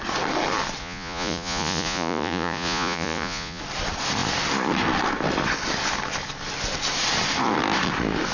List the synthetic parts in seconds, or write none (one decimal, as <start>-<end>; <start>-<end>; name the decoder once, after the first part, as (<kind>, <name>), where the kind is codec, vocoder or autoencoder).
0.8-3.6 (vocoder, Vocos)